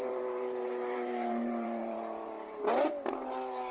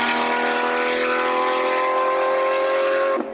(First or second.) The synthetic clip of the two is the first